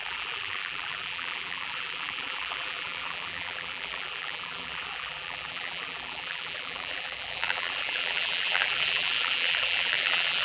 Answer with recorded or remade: remade